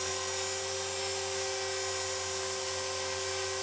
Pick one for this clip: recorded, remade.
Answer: recorded